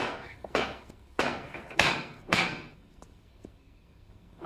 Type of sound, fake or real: fake